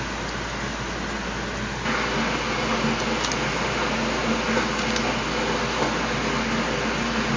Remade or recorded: recorded